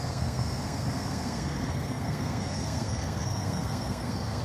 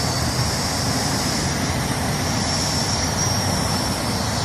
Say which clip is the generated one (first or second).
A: first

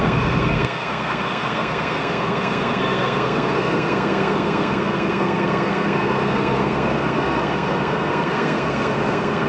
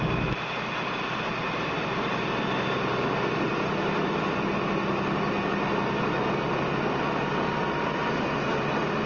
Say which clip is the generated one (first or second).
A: first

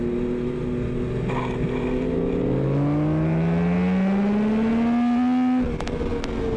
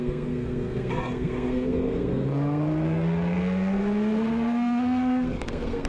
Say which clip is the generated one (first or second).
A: second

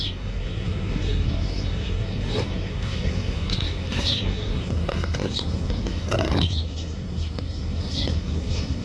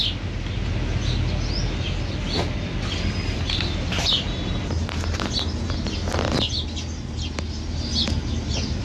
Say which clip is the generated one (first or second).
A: first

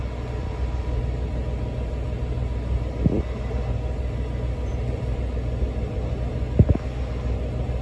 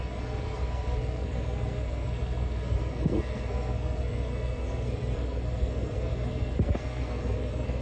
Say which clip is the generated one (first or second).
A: second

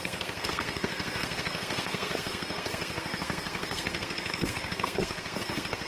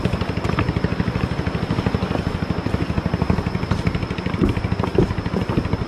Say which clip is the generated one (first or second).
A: first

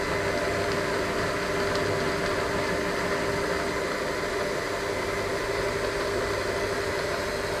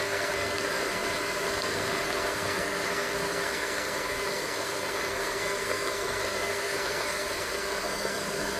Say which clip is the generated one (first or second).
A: second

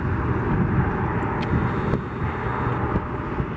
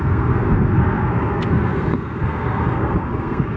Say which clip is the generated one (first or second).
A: second